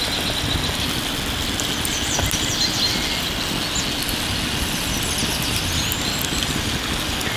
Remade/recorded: recorded